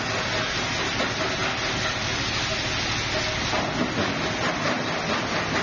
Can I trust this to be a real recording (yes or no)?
yes